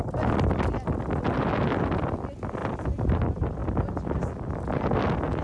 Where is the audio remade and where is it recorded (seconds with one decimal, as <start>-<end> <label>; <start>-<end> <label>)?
0.0-5.4 recorded